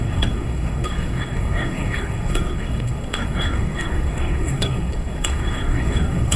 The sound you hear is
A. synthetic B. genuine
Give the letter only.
A